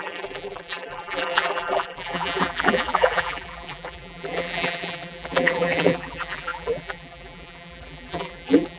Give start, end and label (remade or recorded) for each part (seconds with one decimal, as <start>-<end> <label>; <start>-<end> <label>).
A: 0.0-8.8 remade